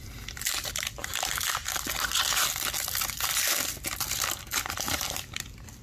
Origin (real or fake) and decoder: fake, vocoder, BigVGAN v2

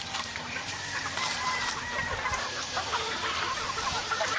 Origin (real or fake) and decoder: fake, vocoder, BigVGAN v2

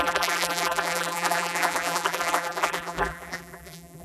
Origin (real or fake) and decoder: fake, vocoder, BigVGAN v2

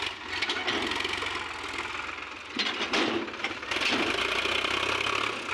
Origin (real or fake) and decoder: real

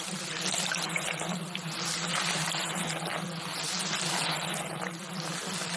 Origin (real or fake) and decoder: fake, vocoder, BigVGAN v2